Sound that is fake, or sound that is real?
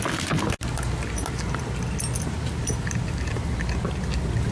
real